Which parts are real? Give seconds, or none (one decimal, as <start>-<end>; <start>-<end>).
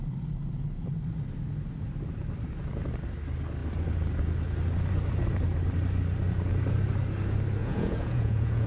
0.0-7.6